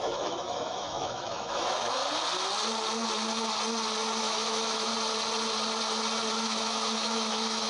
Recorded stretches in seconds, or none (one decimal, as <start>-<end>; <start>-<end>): 2.0-4.2; 4.9-6.3